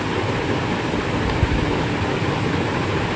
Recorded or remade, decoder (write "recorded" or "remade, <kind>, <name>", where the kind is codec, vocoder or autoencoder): recorded